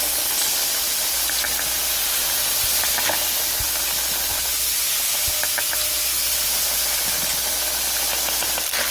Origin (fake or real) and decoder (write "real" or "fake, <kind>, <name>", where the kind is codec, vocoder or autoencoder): real